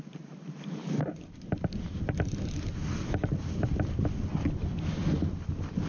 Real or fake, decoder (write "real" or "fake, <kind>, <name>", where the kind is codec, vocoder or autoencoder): real